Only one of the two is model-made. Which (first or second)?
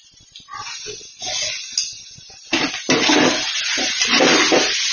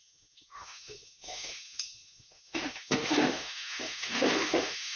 second